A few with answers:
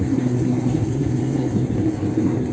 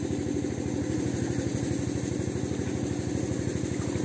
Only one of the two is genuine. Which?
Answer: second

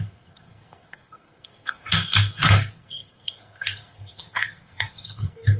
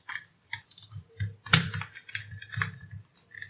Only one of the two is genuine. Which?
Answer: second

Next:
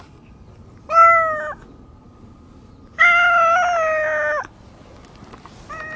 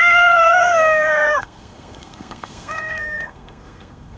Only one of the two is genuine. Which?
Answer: first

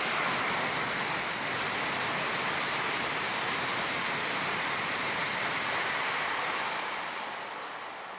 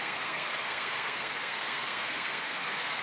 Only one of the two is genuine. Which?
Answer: first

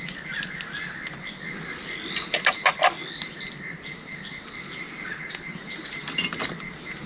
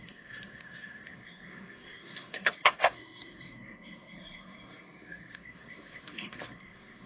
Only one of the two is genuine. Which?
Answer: first